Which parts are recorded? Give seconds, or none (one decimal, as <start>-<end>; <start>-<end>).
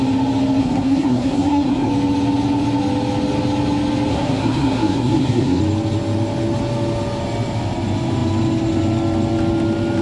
0.0-0.6; 1.9-4.1; 5.6-10.0